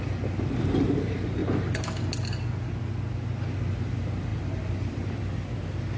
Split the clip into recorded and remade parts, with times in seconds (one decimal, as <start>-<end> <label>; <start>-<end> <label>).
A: 0.0-4.3 recorded; 4.3-5.0 remade; 5.0-6.0 recorded